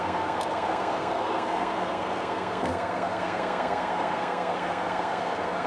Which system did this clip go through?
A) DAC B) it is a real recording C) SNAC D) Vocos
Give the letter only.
C